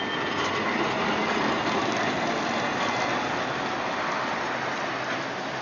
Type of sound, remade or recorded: recorded